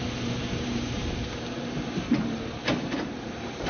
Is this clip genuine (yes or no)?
no